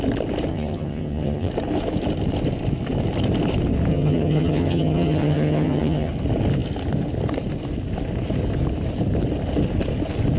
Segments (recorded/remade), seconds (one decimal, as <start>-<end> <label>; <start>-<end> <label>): 0.0-0.5 recorded; 0.5-1.5 remade; 1.5-3.9 recorded; 3.9-6.1 remade; 6.1-10.4 recorded